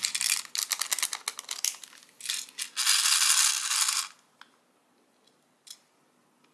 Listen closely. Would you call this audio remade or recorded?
recorded